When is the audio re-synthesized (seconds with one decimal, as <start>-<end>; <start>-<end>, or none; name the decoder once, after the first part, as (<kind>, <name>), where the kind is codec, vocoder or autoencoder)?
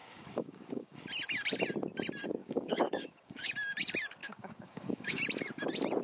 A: 0.0-1.0 (codec, DAC); 2.4-3.5; 4.2-5.2